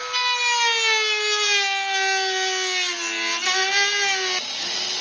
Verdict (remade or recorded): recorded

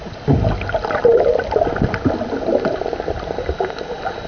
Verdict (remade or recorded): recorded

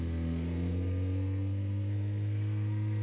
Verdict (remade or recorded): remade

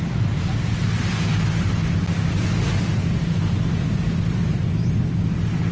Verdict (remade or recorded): recorded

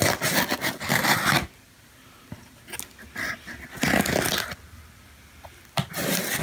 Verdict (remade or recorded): recorded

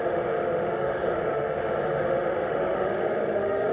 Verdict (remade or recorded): remade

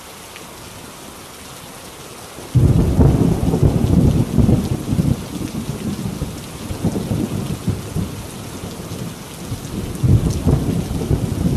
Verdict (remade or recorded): recorded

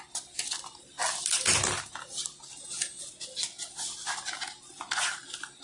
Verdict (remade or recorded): recorded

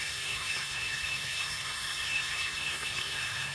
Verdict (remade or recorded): remade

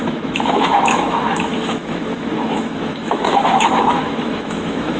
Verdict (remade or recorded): remade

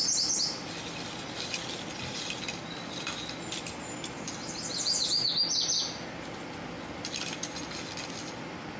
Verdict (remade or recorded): recorded